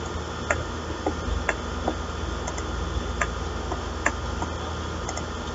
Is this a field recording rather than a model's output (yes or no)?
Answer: yes